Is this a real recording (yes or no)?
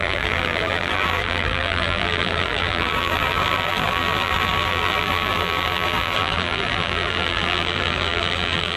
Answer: no